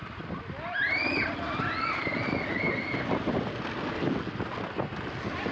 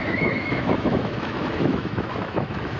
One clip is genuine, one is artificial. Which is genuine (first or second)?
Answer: first